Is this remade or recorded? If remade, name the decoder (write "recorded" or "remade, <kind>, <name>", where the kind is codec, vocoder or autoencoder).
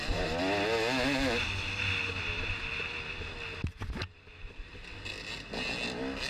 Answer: recorded